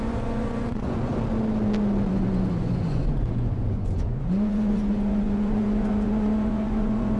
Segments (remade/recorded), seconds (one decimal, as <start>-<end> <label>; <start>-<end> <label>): 0.0-1.1 remade; 1.1-2.1 recorded; 2.1-7.2 remade